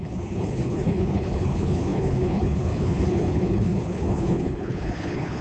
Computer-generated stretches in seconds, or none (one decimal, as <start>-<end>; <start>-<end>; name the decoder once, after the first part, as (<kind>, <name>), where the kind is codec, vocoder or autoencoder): 0.0-5.4 (codec, HILCodec)